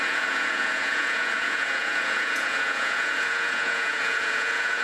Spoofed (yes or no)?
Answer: yes